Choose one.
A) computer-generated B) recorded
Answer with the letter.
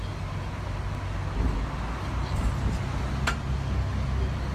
B